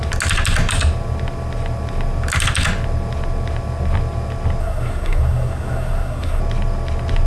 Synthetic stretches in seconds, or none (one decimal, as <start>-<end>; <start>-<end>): 4.6-6.4